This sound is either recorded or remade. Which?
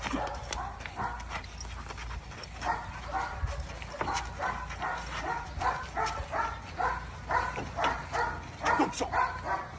recorded